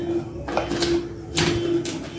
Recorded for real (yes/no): yes